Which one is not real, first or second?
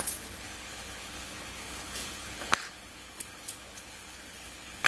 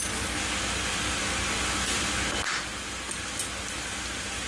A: first